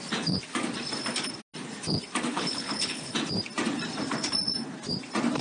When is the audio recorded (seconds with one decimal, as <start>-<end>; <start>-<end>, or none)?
0.0-2.3; 3.1-5.4